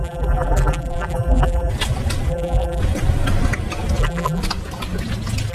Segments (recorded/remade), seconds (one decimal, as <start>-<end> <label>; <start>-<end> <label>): 0.0-1.7 remade; 1.7-2.3 recorded; 2.3-2.8 remade; 2.8-4.0 recorded; 4.0-4.4 remade; 4.4-5.5 recorded

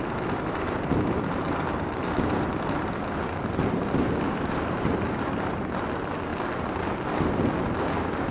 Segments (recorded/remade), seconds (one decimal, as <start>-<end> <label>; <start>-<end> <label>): 0.0-6.3 remade; 6.3-8.3 recorded

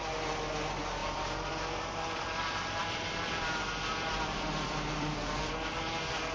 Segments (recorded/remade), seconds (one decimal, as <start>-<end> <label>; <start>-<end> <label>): 0.0-1.0 recorded; 1.0-2.2 remade; 2.2-2.8 recorded; 2.8-5.4 remade; 5.4-6.3 recorded

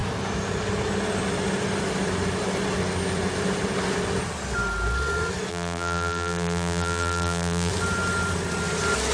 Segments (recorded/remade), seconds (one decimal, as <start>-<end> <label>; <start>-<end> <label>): 0.0-5.5 recorded; 5.5-7.7 remade; 7.7-9.1 recorded

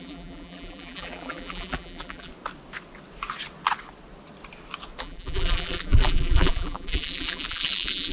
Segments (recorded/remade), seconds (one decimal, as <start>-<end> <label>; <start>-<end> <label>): 0.0-2.3 remade; 2.3-5.0 recorded; 5.0-8.1 remade

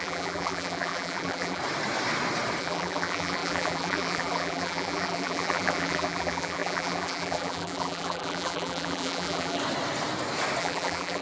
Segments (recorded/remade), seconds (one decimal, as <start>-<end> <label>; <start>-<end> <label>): 0.0-1.6 remade; 1.6-2.6 recorded; 2.6-9.6 remade; 9.6-10.6 recorded; 10.6-11.2 remade